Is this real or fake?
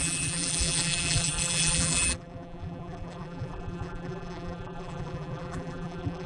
fake